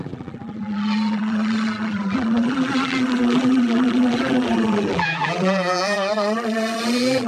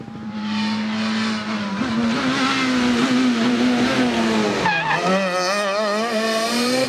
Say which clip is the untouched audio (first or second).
second